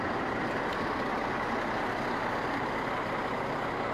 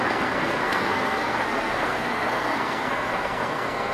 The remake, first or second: second